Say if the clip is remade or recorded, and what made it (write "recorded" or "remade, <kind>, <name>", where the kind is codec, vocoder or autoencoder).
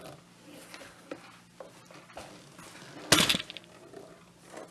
recorded